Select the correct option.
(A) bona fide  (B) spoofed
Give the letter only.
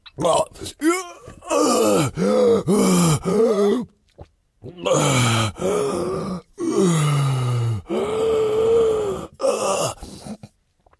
A